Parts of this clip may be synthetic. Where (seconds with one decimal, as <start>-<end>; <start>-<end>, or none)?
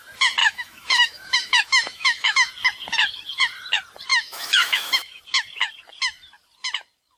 0.4-2.5; 4.1-5.2